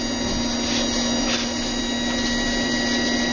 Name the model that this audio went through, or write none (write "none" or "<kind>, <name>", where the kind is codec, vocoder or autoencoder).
none